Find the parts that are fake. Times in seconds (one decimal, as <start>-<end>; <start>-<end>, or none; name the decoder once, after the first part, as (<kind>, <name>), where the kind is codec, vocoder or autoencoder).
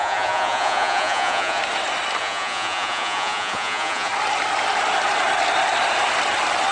0.0-1.6 (vocoder, Vocos); 2.2-4.1